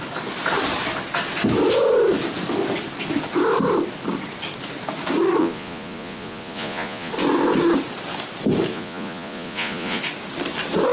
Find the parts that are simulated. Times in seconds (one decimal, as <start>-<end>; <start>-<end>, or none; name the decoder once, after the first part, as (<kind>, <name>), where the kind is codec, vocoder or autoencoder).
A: 5.4-7.1 (vocoder, Vocos); 8.7-10.0